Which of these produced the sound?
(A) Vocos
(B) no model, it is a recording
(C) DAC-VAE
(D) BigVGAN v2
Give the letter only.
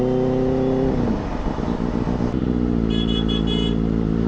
B